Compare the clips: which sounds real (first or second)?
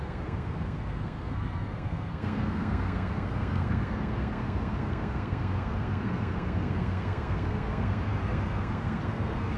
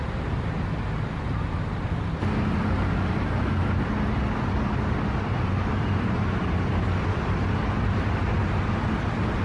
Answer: second